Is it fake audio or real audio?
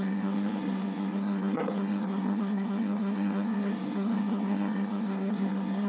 fake